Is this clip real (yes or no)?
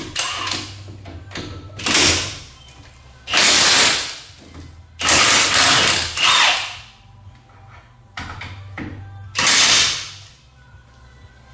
yes